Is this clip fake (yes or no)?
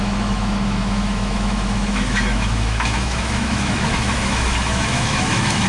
yes